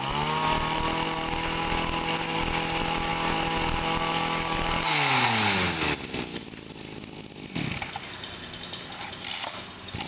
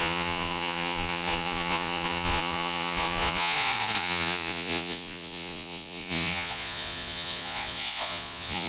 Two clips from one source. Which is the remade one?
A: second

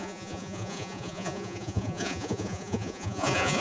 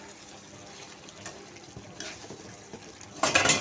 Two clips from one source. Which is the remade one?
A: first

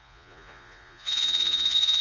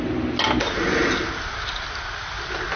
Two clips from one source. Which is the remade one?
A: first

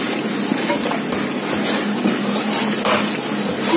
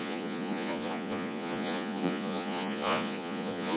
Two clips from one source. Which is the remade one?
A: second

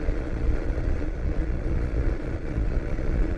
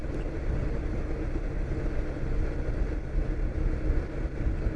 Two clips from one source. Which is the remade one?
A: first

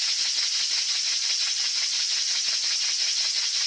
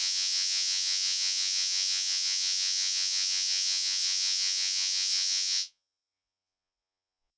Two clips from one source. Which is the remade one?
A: second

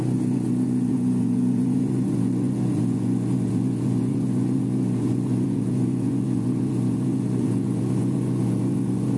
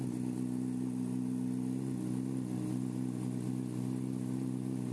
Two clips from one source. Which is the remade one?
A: first